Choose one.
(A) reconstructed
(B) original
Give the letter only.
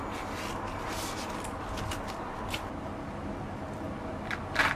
B